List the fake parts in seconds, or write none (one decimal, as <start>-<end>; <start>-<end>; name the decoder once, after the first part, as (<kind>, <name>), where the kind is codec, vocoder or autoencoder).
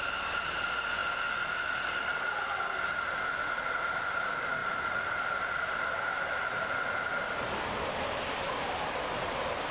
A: none